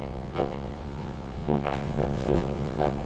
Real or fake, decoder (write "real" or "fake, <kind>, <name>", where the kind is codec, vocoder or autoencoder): fake, vocoder, WaveNeXt